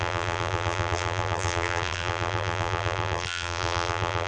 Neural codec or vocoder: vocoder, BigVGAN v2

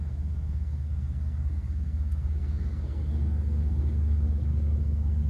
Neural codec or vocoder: codec, SNAC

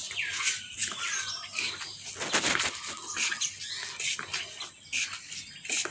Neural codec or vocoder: none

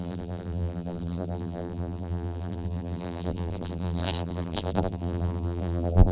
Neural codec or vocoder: vocoder, BigVGAN v2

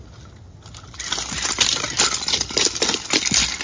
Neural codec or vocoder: none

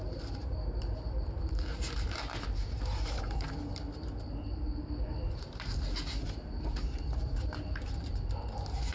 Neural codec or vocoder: vocoder, BigVGAN v2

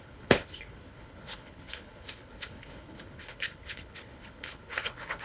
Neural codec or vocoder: codec, HILCodec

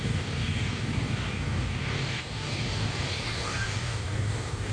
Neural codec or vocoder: codec, DAC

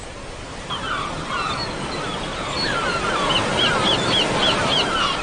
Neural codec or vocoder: none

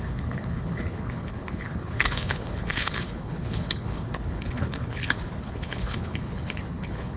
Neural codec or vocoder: codec, HILCodec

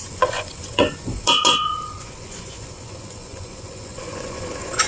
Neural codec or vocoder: vocoder, Vocos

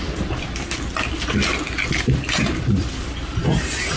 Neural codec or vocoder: none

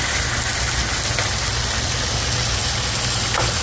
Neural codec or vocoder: none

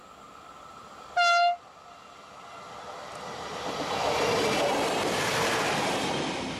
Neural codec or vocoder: none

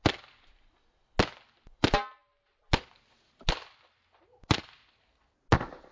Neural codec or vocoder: none